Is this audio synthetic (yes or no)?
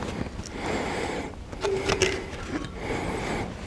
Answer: yes